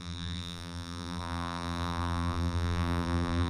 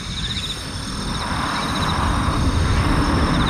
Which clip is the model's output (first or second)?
first